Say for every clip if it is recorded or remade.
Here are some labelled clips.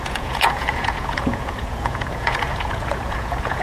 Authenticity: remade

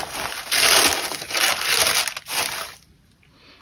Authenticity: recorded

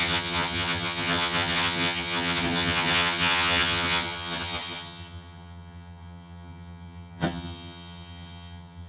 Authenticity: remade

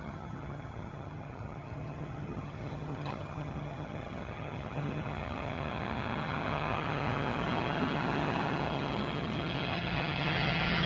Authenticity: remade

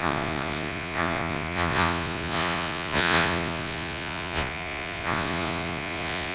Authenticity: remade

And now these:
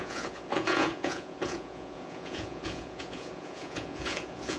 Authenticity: remade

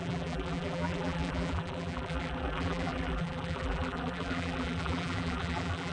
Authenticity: remade